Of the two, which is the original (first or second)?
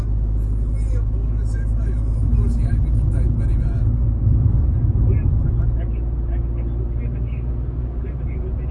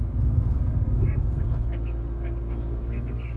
first